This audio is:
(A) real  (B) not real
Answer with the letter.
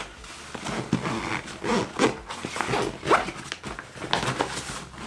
A